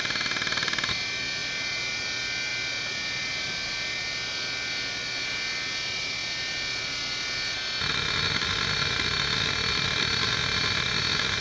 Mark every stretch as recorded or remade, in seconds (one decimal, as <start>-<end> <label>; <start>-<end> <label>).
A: 0.0-11.4 recorded